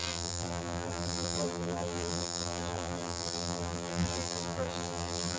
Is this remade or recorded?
remade